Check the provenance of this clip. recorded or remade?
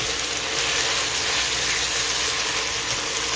recorded